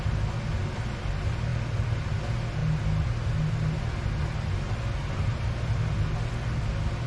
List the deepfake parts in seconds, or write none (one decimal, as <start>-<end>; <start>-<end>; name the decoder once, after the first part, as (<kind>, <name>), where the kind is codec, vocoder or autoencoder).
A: none